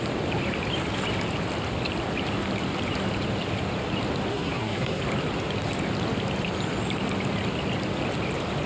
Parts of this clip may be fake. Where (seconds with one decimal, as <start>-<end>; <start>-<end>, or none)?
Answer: 4.3-5.0